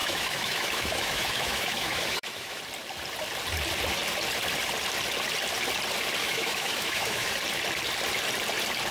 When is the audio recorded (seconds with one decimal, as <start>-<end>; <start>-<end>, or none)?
2.6-6.2; 7.3-8.9